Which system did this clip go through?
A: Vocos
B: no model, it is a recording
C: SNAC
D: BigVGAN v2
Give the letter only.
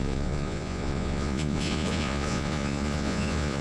A